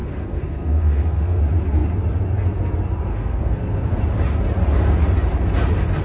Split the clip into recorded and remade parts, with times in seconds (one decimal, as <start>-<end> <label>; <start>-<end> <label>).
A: 0.0-1.4 remade; 1.4-3.1 recorded; 3.1-4.0 remade; 4.0-6.0 recorded

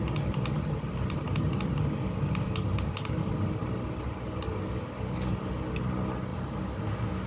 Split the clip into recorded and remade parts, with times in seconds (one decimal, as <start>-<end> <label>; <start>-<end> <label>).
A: 0.0-7.3 recorded

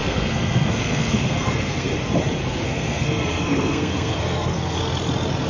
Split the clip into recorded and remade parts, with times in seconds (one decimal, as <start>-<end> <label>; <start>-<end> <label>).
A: 0.0-1.9 remade; 1.9-2.4 recorded; 2.4-4.8 remade; 4.8-5.5 recorded

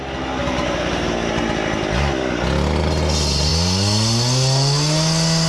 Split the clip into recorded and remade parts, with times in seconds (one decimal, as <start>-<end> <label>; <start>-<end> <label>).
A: 0.0-0.4 recorded; 0.4-1.4 remade; 1.4-5.5 recorded

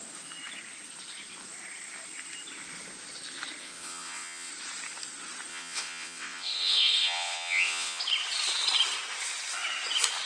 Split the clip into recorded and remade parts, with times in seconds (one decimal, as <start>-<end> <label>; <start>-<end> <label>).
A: 0.0-3.6 recorded; 3.6-4.5 remade; 4.5-5.5 recorded; 5.5-8.0 remade; 8.0-10.3 recorded

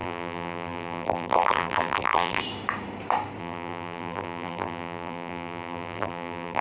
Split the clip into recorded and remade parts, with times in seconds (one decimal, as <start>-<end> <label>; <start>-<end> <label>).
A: 0.0-2.4 remade; 2.4-3.4 recorded; 3.4-6.6 remade